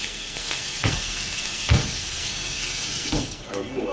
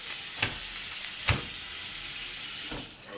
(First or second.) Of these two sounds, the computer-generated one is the first